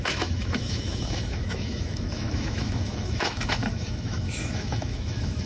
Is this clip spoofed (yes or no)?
yes